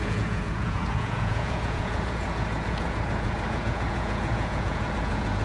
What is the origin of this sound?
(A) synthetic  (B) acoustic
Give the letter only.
A